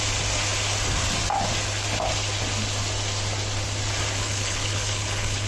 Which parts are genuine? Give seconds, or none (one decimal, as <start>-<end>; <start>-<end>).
0.0-4.2